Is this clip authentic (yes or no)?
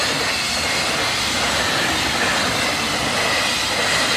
yes